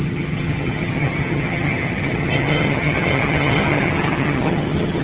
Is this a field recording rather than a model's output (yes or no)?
no